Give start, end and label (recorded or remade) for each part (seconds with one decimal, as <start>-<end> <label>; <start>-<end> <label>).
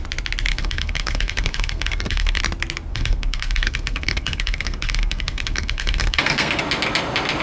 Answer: 0.0-0.5 recorded; 0.5-2.4 remade; 2.4-2.9 recorded; 2.9-6.6 remade; 6.6-7.4 recorded